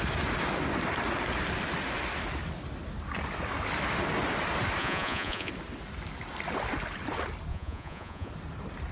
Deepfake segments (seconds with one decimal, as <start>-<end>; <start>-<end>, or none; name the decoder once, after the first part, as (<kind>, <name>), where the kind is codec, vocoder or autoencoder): 4.8-5.5 (vocoder, Vocos); 7.5-8.3